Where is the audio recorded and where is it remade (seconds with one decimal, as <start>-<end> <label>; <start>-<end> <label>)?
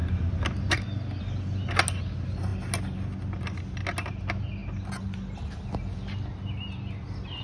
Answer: 0.0-7.4 recorded